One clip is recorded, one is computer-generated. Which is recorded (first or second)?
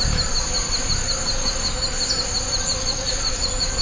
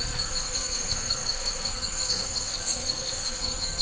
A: first